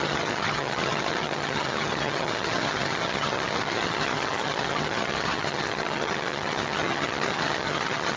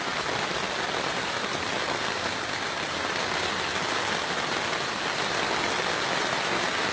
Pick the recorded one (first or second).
second